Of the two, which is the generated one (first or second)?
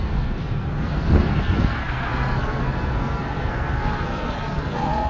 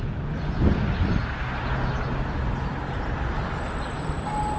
first